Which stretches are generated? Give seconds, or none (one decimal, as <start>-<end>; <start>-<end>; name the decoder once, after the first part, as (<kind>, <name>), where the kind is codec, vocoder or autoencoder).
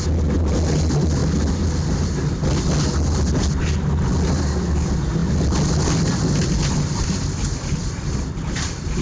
none